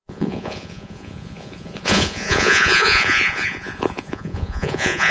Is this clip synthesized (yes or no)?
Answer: yes